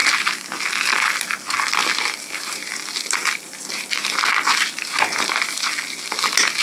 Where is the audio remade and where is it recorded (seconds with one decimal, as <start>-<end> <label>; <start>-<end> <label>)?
0.0-1.8 recorded; 1.8-5.6 remade; 5.6-6.6 recorded